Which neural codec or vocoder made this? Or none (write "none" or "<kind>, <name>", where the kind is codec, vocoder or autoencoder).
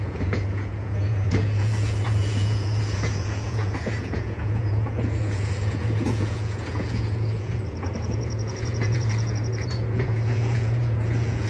vocoder, Vocos